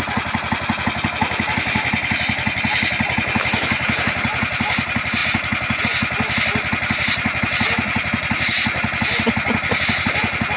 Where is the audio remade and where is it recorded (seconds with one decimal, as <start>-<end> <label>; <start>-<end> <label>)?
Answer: 0.0-10.6 recorded

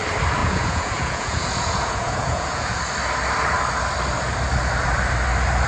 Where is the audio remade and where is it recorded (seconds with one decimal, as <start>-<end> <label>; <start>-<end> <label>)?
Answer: 0.0-0.4 recorded; 0.4-2.8 remade; 2.8-5.7 recorded

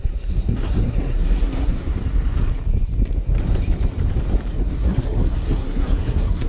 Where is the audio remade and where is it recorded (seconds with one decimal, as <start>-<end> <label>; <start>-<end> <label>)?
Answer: 0.0-2.0 remade; 2.0-4.5 recorded; 4.5-6.5 remade

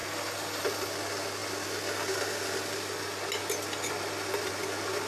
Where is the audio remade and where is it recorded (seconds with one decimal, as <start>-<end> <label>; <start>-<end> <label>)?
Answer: 0.0-5.1 recorded

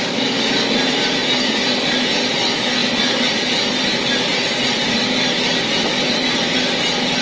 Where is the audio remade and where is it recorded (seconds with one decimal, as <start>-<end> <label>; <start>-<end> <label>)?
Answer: 0.0-7.2 recorded

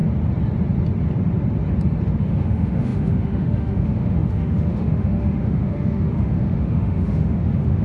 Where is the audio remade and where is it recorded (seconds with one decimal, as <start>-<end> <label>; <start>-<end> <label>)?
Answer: 0.0-2.2 recorded; 2.2-7.8 remade

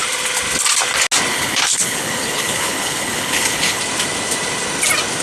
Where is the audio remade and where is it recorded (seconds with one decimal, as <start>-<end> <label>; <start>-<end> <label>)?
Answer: 0.0-1.3 recorded; 1.3-3.8 remade; 3.8-5.2 recorded